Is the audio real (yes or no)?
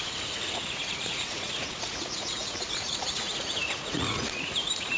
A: no